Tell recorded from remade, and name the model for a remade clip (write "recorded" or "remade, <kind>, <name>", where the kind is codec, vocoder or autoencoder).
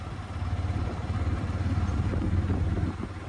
recorded